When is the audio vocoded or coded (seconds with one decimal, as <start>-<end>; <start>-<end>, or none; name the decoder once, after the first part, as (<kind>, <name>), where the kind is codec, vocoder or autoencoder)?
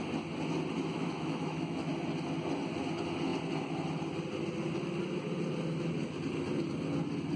0.8-1.9 (autoencoder, DAC-VAE)